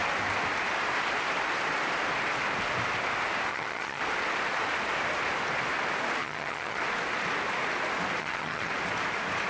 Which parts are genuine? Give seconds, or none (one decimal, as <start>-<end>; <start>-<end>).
0.0-3.5; 4.0-6.2; 6.8-8.2; 8.7-9.5